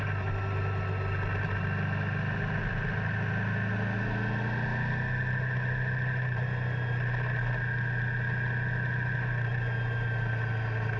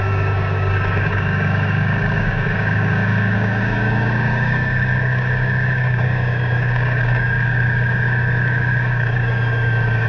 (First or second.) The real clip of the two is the first